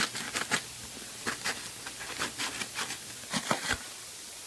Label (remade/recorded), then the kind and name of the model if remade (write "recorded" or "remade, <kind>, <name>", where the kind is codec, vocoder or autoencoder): recorded